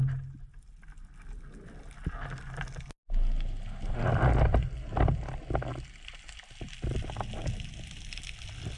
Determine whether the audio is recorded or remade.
recorded